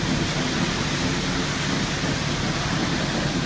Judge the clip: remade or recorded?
recorded